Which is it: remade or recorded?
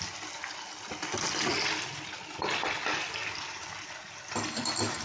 recorded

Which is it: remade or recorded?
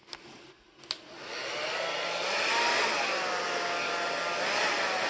recorded